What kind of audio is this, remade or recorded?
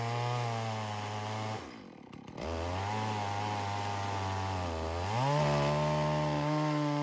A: recorded